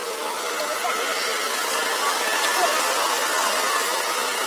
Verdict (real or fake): real